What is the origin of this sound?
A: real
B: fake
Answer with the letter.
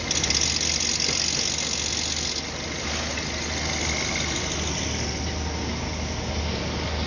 A